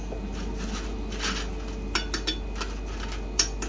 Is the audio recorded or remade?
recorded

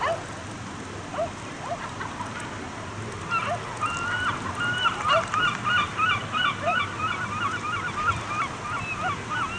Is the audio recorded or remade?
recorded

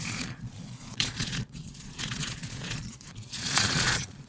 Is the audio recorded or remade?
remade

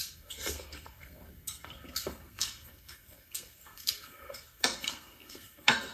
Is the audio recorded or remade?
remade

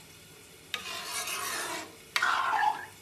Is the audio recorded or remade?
recorded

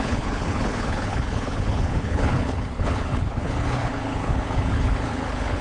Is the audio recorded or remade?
remade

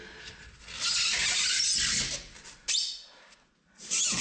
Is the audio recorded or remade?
recorded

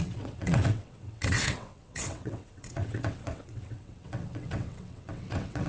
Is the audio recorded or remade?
remade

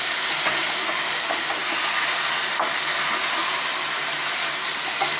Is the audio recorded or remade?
recorded